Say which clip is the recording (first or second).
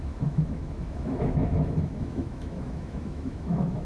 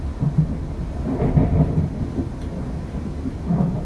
second